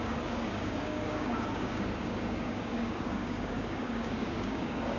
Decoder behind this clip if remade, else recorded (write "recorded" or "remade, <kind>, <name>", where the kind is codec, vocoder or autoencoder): remade, codec, DAC